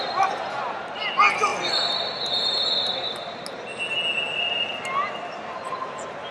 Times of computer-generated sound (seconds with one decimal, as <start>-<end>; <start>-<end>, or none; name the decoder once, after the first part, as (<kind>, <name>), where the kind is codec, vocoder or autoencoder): none

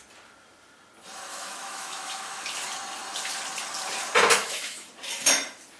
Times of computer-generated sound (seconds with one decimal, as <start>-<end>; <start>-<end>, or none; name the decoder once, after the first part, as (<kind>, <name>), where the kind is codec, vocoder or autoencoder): 1.3-2.4 (autoencoder, DAC-VAE); 4.4-4.9

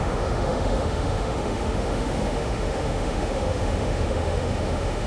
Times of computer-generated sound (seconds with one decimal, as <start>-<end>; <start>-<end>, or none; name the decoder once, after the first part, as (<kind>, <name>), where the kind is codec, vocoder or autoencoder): 0.0-5.1 (autoencoder, DAC-VAE)

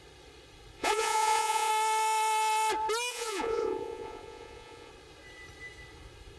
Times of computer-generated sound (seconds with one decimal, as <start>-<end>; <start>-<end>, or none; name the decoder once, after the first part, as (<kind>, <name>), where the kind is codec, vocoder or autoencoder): 0.8-1.7 (vocoder, Vocos); 3.1-4.9

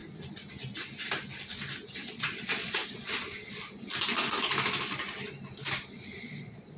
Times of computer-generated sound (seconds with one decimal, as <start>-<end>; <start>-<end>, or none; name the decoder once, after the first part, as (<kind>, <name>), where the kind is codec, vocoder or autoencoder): 2.1-2.8 (vocoder, Vocos); 6.2-6.8

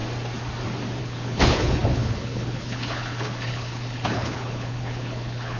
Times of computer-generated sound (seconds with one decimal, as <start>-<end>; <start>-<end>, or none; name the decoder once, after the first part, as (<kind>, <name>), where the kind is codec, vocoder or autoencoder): 1.0-5.6 (codec, HILCodec)

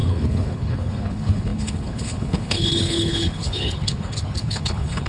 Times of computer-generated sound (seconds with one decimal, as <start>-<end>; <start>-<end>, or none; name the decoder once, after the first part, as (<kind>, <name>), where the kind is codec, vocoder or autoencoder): 0.0-5.1 (codec, HILCodec)